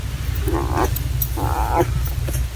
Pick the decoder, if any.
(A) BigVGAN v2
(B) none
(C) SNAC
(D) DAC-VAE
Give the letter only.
A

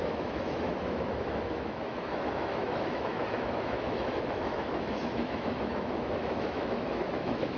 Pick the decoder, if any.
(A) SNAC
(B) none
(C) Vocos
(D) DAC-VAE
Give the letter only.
D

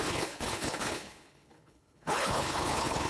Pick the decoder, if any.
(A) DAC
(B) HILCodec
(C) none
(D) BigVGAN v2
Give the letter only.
B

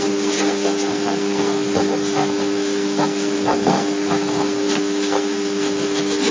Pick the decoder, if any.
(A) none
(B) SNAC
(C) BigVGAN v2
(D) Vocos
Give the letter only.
B